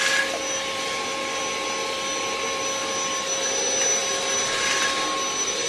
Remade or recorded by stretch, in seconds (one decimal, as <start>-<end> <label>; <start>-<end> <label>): 0.0-5.7 recorded